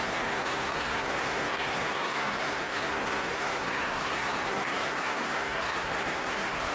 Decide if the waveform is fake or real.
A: fake